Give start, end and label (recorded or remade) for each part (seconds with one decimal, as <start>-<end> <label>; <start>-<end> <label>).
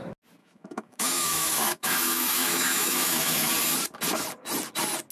0.0-0.4 recorded; 0.4-3.5 remade; 3.5-5.1 recorded